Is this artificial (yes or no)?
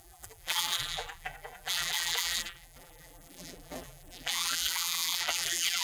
yes